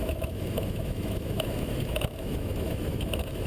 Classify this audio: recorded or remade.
remade